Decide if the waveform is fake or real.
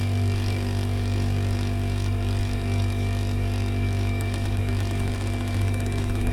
fake